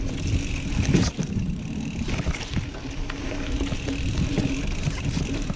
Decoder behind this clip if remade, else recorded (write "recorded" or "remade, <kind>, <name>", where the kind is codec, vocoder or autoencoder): recorded